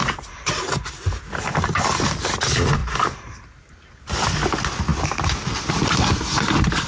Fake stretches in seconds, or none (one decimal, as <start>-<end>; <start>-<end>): 2.8-3.9